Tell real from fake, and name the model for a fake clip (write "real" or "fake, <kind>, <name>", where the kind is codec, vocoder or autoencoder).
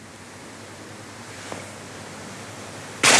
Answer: real